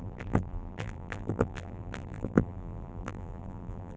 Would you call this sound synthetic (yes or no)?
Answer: yes